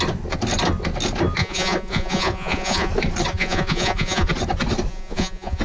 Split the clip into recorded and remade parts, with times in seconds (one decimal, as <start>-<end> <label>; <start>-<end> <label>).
0.0-1.4 recorded; 1.4-2.9 remade; 2.9-3.3 recorded; 3.3-4.3 remade; 4.3-4.9 recorded; 4.9-5.6 remade